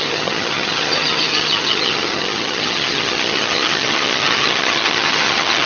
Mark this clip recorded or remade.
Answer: remade